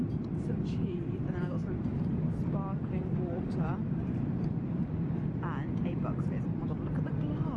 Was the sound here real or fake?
fake